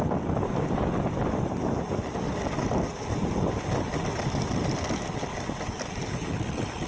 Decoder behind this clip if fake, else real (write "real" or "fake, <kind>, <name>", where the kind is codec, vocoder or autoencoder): real